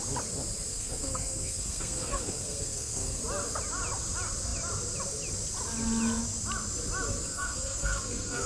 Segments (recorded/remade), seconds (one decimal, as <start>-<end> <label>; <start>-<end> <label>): 0.0-0.7 recorded; 0.7-3.2 remade; 3.2-7.3 recorded; 7.3-8.5 remade